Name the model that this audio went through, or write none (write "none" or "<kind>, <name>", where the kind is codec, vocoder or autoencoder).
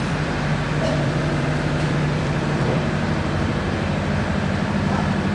vocoder, BigVGAN v2